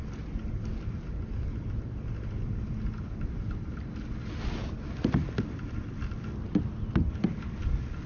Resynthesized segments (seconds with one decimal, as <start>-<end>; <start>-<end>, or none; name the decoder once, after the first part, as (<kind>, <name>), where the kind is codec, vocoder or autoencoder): 4.6-5.7 (vocoder, BigVGAN v2)